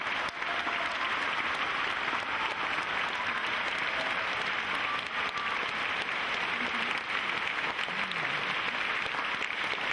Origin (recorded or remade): recorded